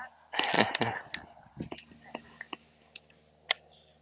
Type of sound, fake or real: real